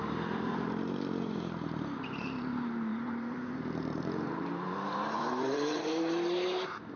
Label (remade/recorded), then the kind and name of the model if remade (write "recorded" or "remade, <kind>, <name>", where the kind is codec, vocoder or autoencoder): remade, vocoder, BigVGAN v2